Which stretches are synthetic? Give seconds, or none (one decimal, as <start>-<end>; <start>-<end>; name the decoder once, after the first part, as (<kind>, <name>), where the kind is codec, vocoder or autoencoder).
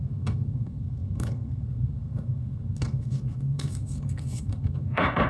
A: 0.0-5.3 (codec, SNAC)